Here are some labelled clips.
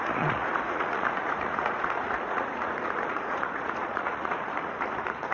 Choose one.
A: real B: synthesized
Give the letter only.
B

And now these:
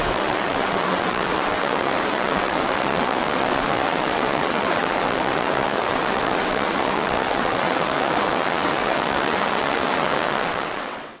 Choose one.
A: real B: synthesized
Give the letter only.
B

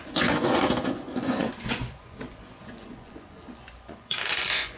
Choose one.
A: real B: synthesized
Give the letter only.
B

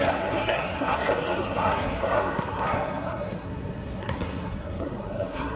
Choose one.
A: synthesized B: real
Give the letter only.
A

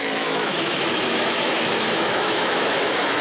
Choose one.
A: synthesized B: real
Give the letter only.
A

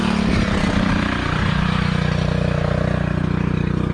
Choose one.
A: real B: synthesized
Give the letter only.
A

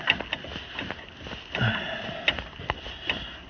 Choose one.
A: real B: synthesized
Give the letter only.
A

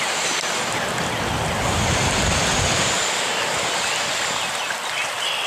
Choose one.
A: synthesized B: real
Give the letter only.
B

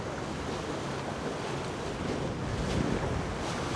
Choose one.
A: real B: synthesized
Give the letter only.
A